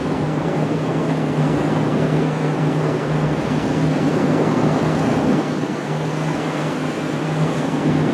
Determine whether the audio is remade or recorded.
remade